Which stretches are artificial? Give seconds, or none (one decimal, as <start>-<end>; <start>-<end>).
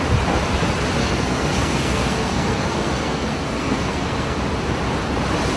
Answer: 1.0-4.4